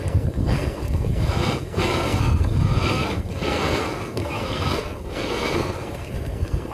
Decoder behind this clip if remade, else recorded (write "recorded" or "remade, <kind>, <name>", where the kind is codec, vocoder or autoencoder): remade, codec, SNAC